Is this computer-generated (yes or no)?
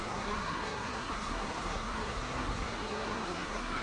yes